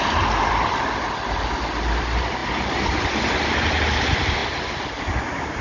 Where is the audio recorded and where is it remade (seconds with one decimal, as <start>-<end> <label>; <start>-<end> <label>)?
0.0-5.6 recorded